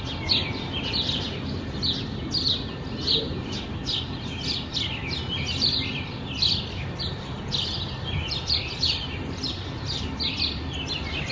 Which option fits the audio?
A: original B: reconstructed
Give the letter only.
A